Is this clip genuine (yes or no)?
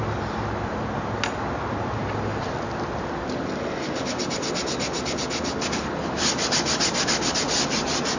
yes